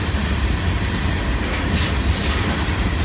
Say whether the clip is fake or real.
real